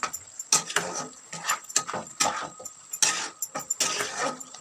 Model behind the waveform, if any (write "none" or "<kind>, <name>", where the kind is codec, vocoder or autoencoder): none